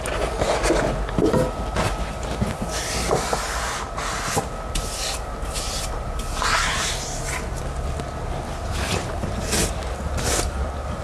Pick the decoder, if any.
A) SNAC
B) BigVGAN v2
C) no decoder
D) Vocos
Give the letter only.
C